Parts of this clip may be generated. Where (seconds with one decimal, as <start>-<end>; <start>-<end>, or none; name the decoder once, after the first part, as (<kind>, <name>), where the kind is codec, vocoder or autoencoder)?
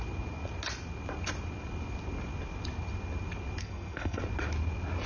3.6-4.2 (codec, SNAC)